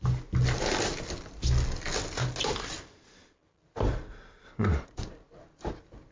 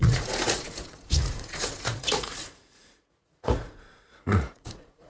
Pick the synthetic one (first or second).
second